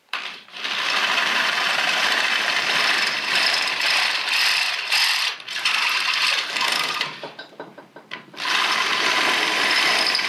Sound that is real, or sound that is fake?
fake